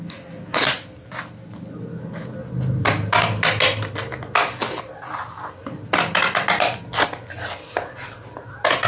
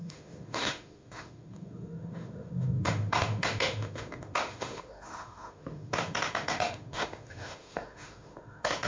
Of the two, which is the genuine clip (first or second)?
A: first